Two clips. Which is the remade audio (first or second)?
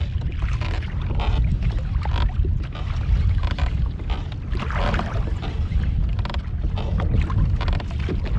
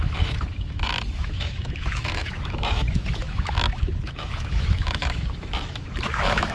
second